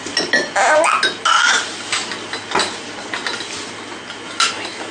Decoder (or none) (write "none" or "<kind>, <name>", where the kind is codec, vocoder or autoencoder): none